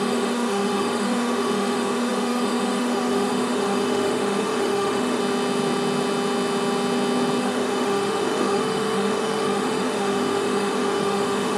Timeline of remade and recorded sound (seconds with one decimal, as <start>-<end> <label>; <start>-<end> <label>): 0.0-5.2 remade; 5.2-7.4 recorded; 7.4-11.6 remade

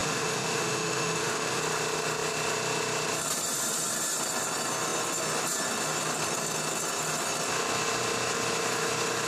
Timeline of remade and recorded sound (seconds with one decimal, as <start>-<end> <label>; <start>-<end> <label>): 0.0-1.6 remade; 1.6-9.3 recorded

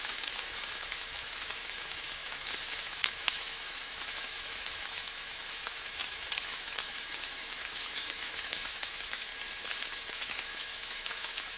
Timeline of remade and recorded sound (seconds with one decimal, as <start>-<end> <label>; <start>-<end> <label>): 0.0-9.3 remade; 9.3-10.1 recorded; 10.1-11.6 remade

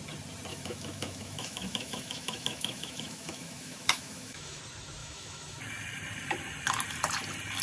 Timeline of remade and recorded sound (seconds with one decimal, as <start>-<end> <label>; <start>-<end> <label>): 0.0-0.5 recorded; 0.5-4.6 remade; 4.6-5.0 recorded; 5.0-5.6 remade; 5.6-7.6 recorded

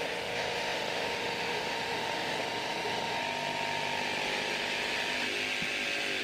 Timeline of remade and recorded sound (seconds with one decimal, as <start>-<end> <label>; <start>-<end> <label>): 0.0-3.2 remade; 3.2-6.2 recorded

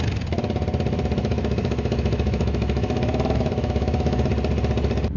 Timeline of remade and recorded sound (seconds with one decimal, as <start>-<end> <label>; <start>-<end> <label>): 0.0-1.2 recorded; 1.2-4.3 remade; 4.3-5.2 recorded